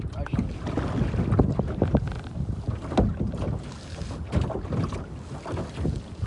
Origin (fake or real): real